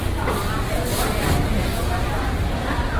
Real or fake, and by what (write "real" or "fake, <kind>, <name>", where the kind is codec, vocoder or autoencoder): real